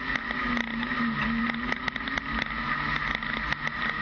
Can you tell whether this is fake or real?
real